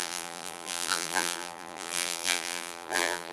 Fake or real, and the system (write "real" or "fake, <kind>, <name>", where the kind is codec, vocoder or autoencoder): fake, vocoder, BigVGAN v2